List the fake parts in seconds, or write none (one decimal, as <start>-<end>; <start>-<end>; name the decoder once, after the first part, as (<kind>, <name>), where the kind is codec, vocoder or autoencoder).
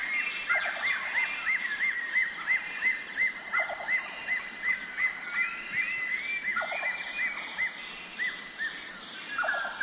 0.0-4.4 (vocoder, BigVGAN v2)